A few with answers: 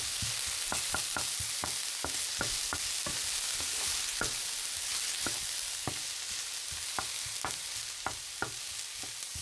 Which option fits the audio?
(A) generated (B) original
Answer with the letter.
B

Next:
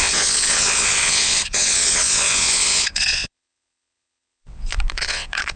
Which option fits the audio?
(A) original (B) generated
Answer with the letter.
B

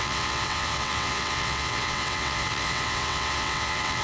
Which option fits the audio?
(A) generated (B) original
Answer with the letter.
A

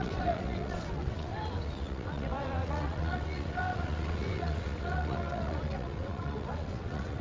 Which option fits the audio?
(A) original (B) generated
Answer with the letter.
B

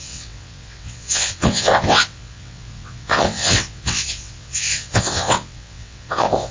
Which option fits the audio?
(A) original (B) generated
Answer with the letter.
B